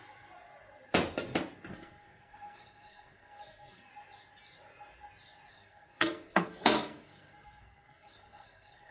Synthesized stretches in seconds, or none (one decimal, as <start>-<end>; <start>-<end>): 1.7-3.9; 5.5-8.9